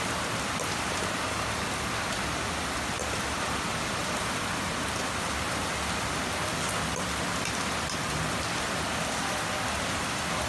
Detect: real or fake fake